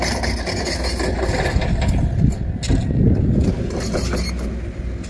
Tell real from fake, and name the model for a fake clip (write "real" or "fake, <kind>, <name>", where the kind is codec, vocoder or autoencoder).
real